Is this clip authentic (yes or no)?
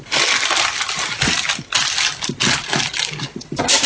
yes